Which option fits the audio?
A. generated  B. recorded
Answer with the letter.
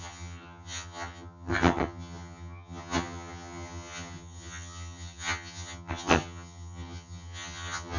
A